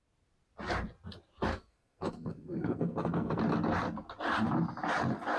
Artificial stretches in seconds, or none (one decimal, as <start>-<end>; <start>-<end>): 1.5-3.4

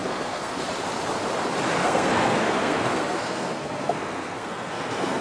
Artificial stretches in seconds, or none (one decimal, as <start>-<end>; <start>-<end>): 0.0-0.6; 1.8-5.2

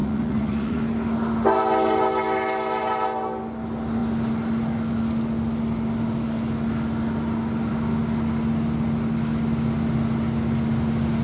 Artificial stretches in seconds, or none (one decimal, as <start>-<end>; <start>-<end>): 0.0-0.8

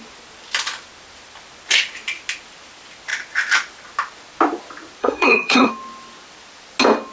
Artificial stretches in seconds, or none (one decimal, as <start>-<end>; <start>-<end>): 5.0-5.7

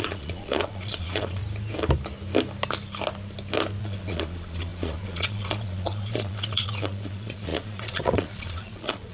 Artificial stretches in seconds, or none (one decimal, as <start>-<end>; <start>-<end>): 0.0-1.4; 3.8-9.1

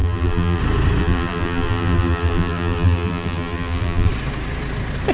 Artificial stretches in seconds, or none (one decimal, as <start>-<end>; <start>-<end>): 0.0-0.6; 1.0-4.1

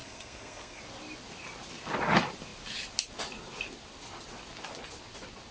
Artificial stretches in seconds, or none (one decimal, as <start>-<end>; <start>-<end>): 0.0-0.8